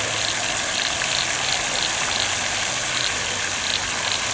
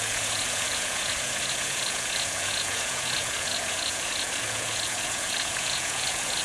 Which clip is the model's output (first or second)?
second